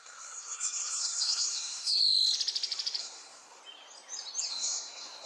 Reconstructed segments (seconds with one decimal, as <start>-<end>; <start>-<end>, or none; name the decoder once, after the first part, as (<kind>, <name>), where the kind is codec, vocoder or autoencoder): 0.0-2.0 (codec, SNAC); 3.0-3.6; 4.5-5.3